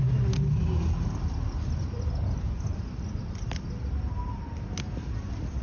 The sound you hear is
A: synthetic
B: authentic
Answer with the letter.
B